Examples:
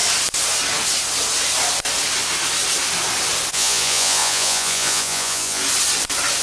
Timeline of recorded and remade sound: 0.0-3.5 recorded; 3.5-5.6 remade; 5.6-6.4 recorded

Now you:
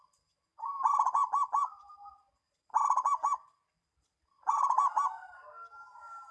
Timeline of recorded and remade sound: 0.0-6.3 recorded

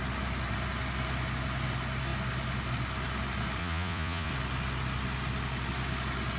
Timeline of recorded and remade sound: 0.0-3.6 recorded; 3.6-4.3 remade; 4.3-6.4 recorded

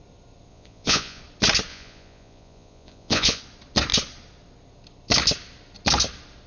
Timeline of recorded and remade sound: 0.0-0.5 recorded; 0.5-1.2 remade; 1.2-1.7 recorded; 1.7-3.4 remade; 3.4-6.5 recorded